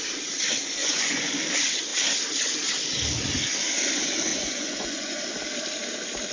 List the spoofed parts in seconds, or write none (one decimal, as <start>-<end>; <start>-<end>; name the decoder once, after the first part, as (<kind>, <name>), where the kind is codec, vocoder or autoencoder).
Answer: 0.8-1.3 (vocoder, Vocos); 4.3-5.2